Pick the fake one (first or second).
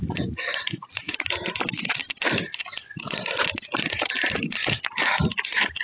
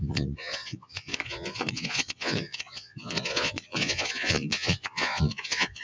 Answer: second